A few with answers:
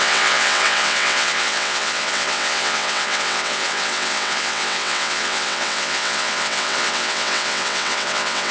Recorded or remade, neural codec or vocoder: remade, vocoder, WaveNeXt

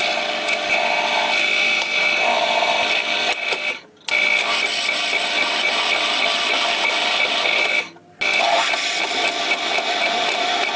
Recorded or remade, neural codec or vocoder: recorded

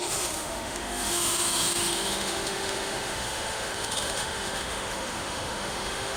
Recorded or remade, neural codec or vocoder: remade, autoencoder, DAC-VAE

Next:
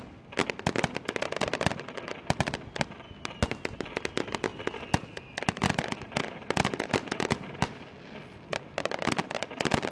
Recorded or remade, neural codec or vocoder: recorded